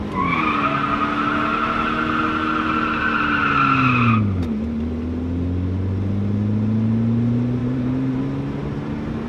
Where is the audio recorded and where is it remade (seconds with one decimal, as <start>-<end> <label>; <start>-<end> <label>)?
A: 0.0-7.6 recorded; 7.6-8.2 remade; 8.2-9.3 recorded

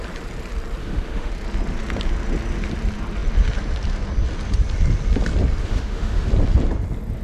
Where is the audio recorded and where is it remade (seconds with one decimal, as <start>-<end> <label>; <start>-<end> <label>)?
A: 0.0-0.8 recorded; 0.8-1.3 remade; 1.3-5.6 recorded; 5.6-6.3 remade; 6.3-7.2 recorded